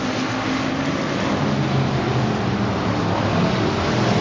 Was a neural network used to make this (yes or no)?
no